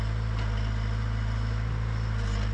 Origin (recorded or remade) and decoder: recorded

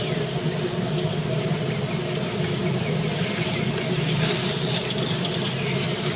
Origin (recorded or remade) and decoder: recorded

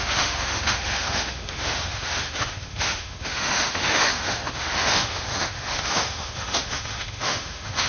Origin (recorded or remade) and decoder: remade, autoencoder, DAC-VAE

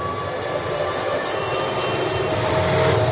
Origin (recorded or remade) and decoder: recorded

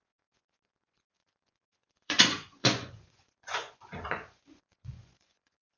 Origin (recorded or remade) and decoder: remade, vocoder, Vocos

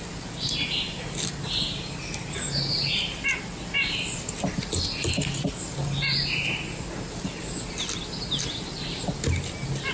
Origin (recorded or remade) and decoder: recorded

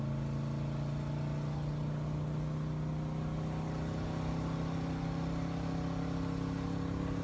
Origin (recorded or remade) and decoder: recorded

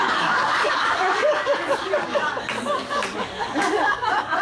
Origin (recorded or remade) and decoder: remade, codec, DAC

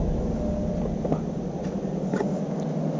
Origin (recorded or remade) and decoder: recorded